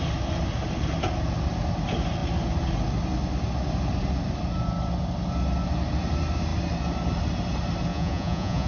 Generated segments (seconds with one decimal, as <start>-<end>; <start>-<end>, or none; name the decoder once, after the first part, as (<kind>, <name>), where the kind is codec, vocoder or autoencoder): 7.9-8.7 (vocoder, Vocos)